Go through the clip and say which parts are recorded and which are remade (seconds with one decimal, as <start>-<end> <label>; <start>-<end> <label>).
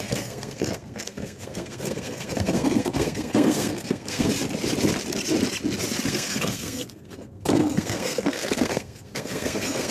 0.0-4.3 remade; 4.3-6.1 recorded; 6.1-9.9 remade